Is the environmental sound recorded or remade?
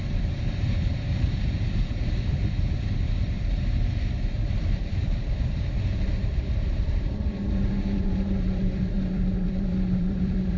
remade